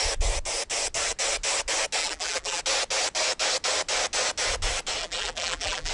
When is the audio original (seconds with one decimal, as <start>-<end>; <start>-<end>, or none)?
0.0-2.0; 2.6-5.0